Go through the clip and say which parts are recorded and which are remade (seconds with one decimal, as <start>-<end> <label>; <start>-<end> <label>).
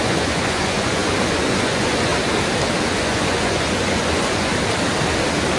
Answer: 0.0-2.1 remade; 2.1-2.8 recorded; 2.8-4.5 remade; 4.5-5.6 recorded